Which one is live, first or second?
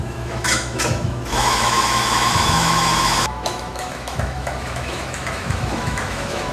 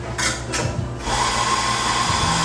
second